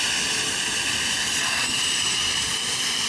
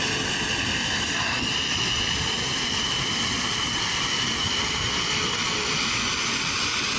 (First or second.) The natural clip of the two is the second